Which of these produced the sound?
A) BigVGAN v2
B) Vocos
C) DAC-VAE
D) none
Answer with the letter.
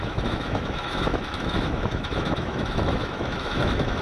C